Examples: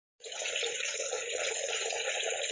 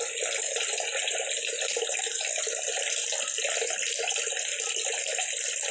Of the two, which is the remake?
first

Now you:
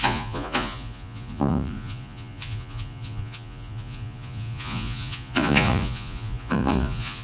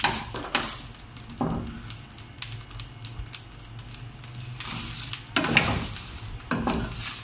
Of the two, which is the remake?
first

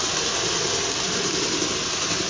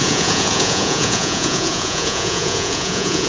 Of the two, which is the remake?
second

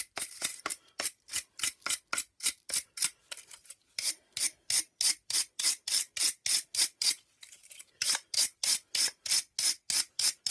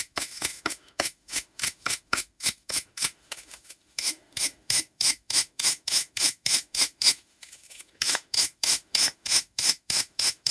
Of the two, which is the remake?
second